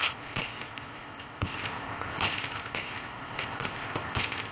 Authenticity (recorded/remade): remade